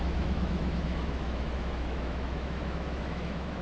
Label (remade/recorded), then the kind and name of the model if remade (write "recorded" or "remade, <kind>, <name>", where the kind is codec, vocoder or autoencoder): remade, autoencoder, DAC-VAE